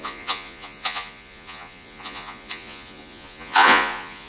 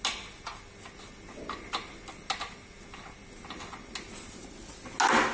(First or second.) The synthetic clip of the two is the first